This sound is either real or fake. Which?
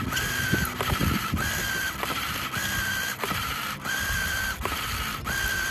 real